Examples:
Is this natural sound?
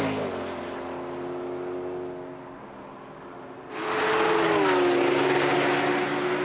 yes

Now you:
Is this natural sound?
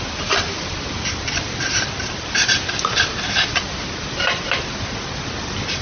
yes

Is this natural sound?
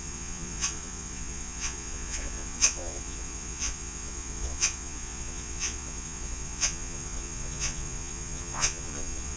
no